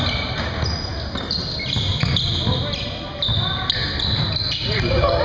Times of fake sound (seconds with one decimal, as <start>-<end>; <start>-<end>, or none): none